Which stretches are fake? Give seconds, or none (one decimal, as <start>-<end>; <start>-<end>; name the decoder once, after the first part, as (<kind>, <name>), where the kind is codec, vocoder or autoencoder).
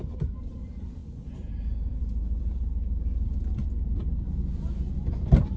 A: 0.0-1.0 (vocoder, BigVGAN v2); 1.6-5.6